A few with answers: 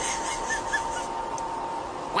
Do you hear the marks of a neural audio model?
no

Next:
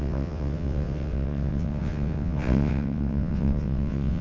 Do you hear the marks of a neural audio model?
yes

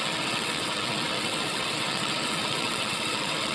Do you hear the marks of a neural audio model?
yes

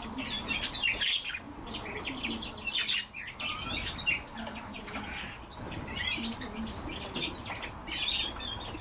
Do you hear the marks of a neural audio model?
no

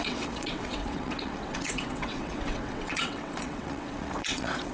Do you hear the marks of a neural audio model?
yes